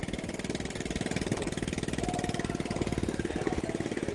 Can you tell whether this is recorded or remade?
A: recorded